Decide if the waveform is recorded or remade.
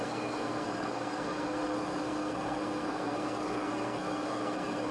remade